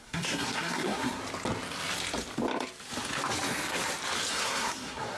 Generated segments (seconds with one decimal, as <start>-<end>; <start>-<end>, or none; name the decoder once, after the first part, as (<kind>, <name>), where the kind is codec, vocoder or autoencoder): 0.0-1.2 (codec, SNAC); 4.3-5.2